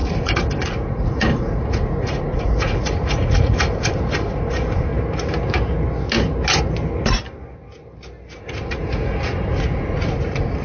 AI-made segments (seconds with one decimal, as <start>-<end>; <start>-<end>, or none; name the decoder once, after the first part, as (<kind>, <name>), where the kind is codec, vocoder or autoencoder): 0.0-4.9 (vocoder, Vocos); 8.4-10.6